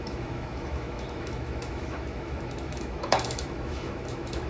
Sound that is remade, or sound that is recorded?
remade